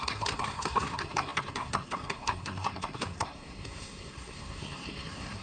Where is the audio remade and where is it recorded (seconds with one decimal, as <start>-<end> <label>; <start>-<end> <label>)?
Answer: 0.0-5.4 remade

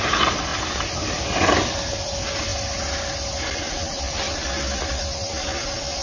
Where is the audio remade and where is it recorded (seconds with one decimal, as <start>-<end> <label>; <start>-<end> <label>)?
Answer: 0.0-6.0 recorded

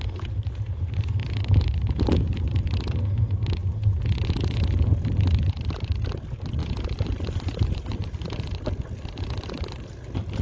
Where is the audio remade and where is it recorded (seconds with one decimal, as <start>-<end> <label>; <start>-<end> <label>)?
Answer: 0.0-10.4 recorded

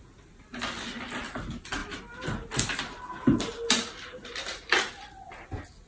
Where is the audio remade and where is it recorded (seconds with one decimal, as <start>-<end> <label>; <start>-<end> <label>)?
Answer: 0.0-5.9 recorded

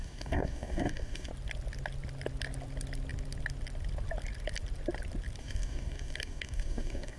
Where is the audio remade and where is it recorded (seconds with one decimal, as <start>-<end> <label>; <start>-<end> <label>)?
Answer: 0.0-1.3 remade; 1.3-5.4 recorded; 5.4-7.2 remade

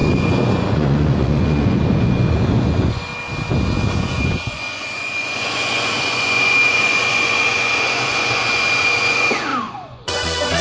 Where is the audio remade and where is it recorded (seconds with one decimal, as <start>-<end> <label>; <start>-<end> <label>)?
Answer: 0.0-3.1 remade; 3.1-4.0 recorded; 4.0-10.6 remade

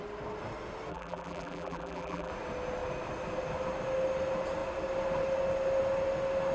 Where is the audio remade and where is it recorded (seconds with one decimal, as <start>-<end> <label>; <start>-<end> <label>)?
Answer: 0.0-0.9 recorded; 0.9-2.3 remade; 2.3-6.5 recorded